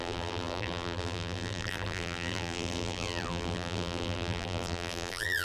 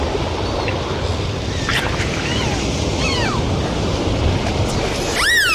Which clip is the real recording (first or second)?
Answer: second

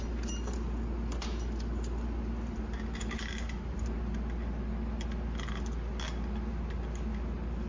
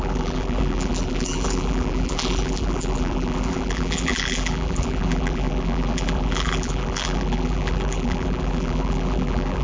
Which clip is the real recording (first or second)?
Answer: first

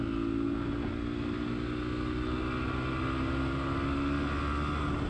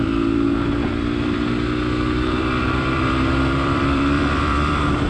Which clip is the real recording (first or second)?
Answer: first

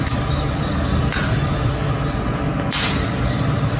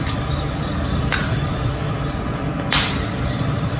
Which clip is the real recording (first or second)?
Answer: first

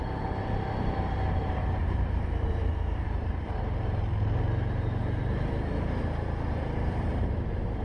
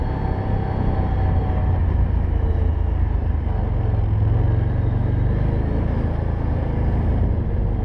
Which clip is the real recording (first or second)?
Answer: second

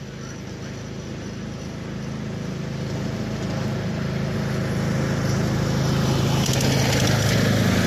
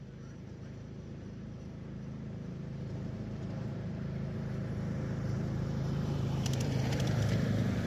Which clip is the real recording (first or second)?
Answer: first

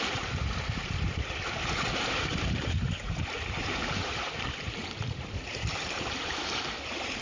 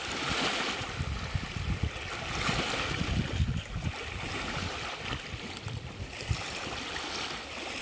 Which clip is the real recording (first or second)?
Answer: second